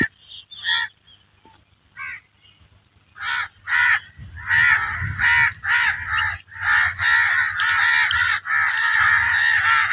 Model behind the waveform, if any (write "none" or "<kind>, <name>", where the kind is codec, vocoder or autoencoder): none